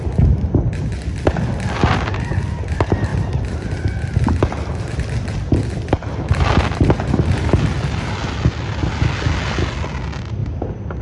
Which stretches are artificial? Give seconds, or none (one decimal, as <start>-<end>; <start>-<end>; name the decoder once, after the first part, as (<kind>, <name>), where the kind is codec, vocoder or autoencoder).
none